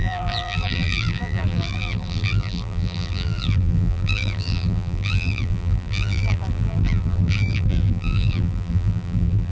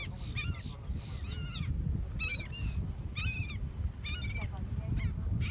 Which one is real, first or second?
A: second